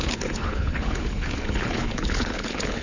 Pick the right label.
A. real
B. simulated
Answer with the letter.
B